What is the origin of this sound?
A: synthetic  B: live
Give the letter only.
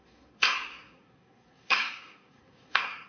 A